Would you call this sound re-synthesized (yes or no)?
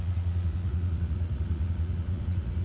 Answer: yes